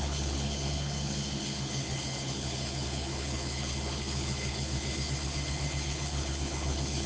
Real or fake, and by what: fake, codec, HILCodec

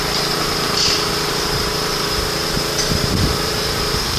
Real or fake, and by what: fake, vocoder, BigVGAN v2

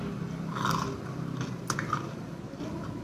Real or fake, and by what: real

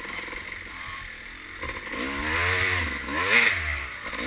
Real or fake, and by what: real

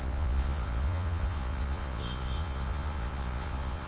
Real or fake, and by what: fake, vocoder, Vocos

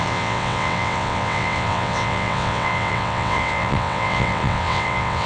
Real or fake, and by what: fake, vocoder, WaveNeXt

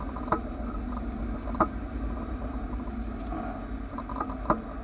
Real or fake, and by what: real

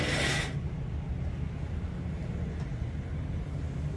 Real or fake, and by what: real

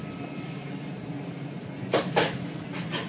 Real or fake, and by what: real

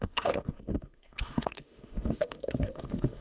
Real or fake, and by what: fake, autoencoder, DAC-VAE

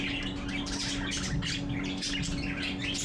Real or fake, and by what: real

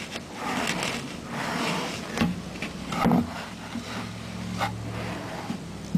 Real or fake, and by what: real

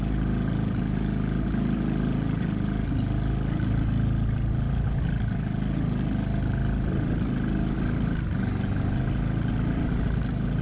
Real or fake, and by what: real